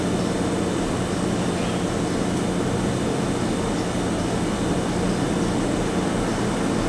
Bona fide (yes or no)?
yes